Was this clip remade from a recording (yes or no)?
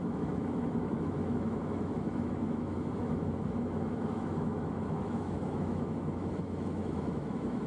yes